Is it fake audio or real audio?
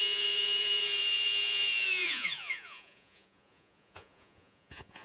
fake